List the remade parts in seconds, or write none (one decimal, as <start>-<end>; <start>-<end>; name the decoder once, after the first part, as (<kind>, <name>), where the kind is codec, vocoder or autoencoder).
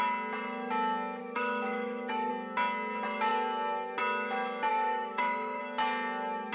1.2-2.3 (autoencoder, DAC-VAE); 4.7-5.6